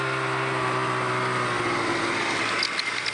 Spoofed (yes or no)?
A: no